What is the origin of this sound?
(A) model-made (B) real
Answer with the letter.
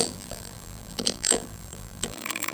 A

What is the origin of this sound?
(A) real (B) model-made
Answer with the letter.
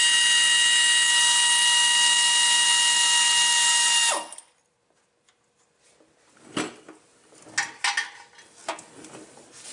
A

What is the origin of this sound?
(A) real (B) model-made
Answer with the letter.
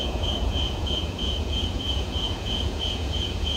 B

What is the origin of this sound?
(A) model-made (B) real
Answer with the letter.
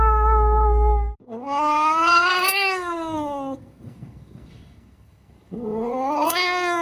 A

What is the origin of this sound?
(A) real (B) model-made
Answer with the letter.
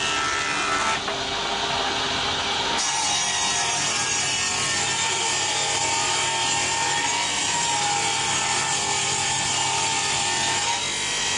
A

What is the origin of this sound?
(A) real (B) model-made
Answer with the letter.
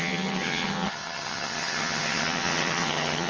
B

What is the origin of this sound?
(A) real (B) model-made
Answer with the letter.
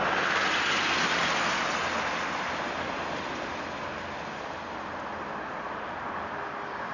A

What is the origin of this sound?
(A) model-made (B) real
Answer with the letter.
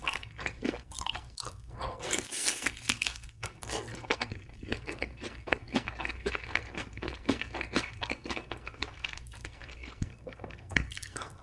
A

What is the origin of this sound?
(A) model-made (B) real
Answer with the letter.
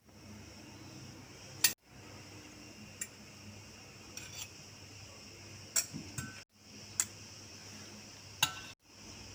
B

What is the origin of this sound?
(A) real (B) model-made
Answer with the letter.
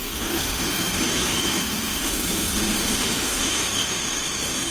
B